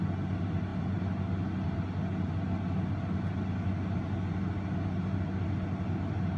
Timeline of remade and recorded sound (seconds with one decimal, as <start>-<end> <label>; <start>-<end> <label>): 0.0-6.4 recorded